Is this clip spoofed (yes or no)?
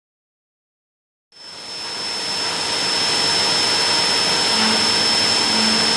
no